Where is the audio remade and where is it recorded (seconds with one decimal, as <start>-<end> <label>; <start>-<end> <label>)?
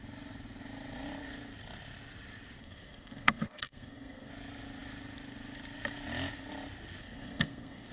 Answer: 0.0-2.6 recorded; 2.6-4.3 remade; 4.3-7.0 recorded; 7.0-7.9 remade